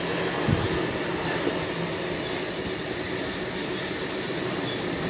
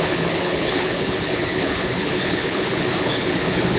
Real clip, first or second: first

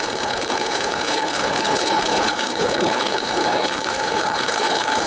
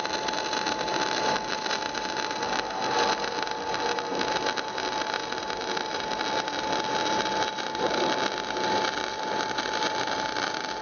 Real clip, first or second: second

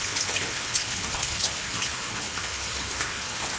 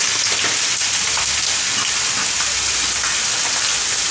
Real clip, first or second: second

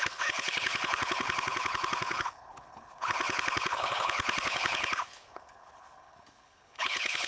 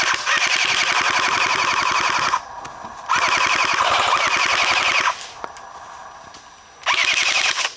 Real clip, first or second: second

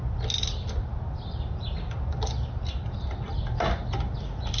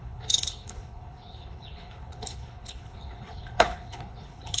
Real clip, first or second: first